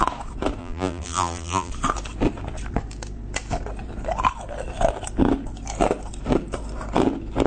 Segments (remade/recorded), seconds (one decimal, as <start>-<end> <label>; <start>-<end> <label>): 0.0-0.6 recorded; 0.6-1.7 remade; 1.7-7.5 recorded